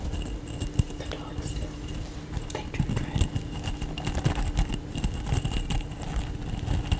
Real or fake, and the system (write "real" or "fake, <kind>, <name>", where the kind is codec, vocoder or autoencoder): real